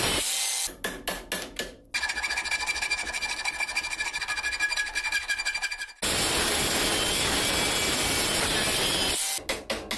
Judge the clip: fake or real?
real